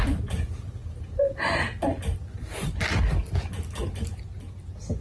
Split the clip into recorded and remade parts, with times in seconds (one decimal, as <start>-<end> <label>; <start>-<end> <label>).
0.0-5.0 recorded